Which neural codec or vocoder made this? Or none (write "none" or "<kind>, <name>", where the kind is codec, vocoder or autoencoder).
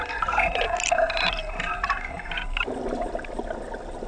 none